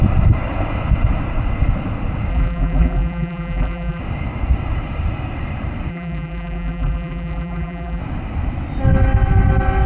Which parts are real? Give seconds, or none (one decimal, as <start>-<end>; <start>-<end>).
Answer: 0.0-2.3; 4.0-5.9; 8.0-9.9